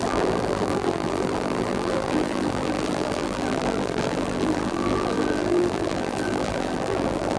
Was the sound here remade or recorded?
remade